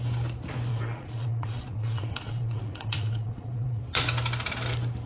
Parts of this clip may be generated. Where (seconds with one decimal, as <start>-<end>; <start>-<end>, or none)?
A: 0.7-3.8